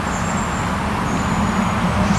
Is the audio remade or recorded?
recorded